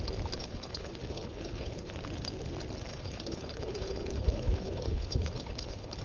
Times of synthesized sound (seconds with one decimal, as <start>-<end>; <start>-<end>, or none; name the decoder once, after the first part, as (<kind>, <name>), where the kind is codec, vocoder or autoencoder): 0.4-1.9 (codec, HILCodec); 2.9-6.0